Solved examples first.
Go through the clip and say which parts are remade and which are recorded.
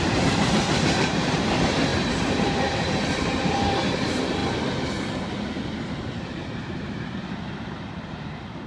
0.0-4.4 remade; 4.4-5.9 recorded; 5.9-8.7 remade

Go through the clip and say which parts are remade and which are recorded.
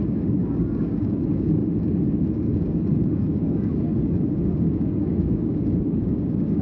0.0-1.6 remade; 1.6-2.3 recorded; 2.3-6.6 remade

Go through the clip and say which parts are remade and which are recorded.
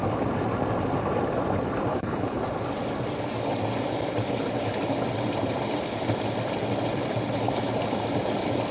0.0-1.9 recorded; 1.9-2.4 remade; 2.4-8.7 recorded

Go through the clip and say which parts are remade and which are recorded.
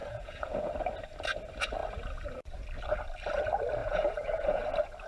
0.0-0.7 remade; 0.7-3.8 recorded; 3.8-4.6 remade; 4.6-5.1 recorded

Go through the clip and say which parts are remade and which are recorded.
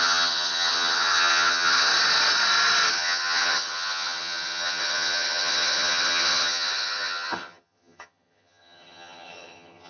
0.0-1.9 remade; 1.9-2.9 recorded; 2.9-9.9 remade